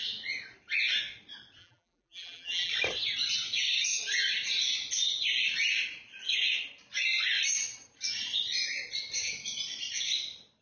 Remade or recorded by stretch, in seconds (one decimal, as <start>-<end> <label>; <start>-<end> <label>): 0.0-1.6 recorded; 1.6-2.7 remade; 2.7-10.6 recorded